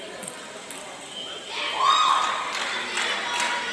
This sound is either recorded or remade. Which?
recorded